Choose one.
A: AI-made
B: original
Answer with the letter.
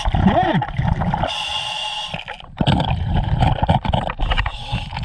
B